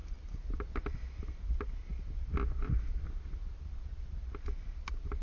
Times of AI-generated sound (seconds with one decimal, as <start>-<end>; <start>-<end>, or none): none